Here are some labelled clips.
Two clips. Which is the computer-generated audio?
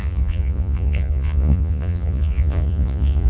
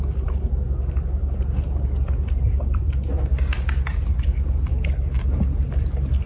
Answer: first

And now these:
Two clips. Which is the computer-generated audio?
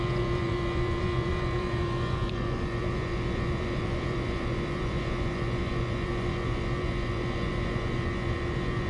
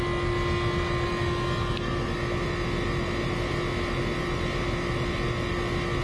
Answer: first